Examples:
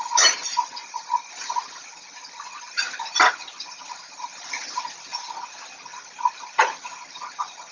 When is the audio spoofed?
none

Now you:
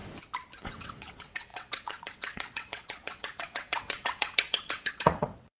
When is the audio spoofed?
0.7-5.6 (vocoder, WaveNeXt)

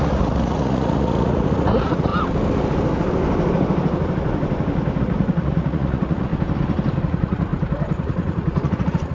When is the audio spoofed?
0.0-2.1 (vocoder, Vocos); 5.0-6.3; 7.0-7.5; 8.0-9.1

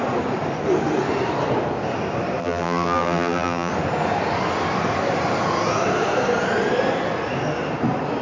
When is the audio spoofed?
2.4-3.7 (vocoder, BigVGAN v2)

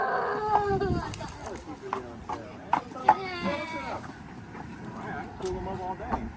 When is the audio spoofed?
3.0-4.2 (codec, DAC)

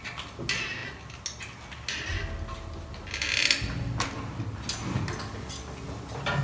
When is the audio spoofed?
none